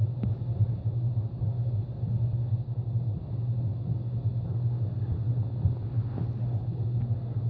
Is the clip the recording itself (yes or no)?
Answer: yes